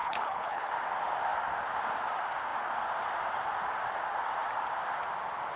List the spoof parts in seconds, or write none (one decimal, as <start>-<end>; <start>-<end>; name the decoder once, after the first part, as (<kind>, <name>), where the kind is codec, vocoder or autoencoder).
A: 0.0-0.7 (codec, HILCodec)